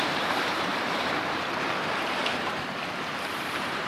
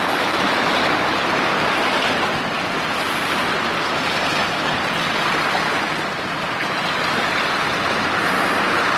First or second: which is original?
second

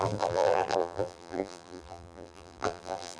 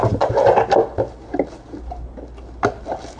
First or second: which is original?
second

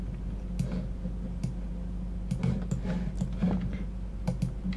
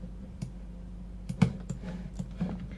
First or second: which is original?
first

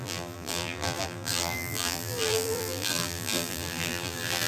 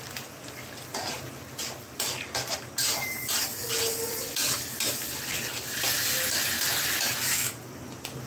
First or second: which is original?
second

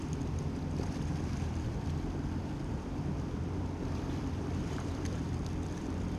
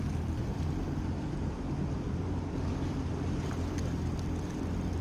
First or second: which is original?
second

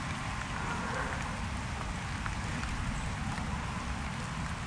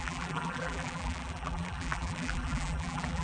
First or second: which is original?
first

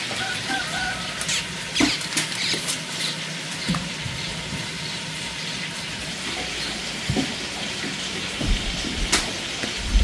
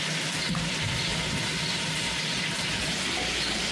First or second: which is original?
second